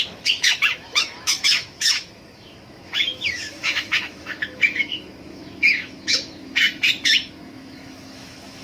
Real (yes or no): no